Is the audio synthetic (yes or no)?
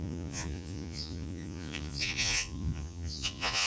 yes